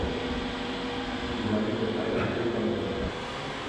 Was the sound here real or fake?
real